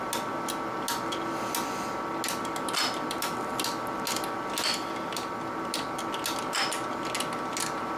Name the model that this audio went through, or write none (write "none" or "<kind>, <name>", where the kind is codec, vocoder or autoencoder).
none